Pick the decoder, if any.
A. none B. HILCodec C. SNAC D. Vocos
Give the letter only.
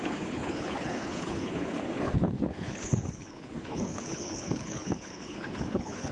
B